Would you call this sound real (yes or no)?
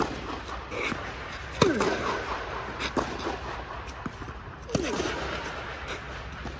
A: yes